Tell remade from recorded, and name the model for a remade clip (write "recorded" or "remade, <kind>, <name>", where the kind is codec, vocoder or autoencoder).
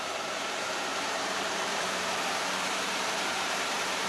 remade, vocoder, BigVGAN v2